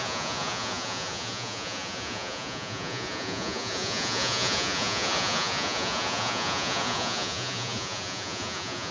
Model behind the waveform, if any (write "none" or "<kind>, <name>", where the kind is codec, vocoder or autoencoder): vocoder, Vocos